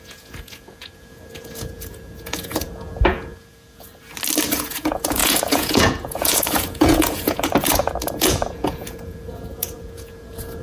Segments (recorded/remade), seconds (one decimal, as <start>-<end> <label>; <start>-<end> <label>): 0.0-3.9 remade; 3.9-4.5 recorded; 4.5-10.6 remade